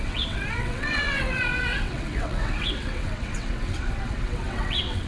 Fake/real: fake